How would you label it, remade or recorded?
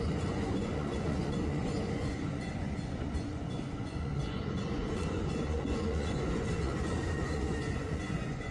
remade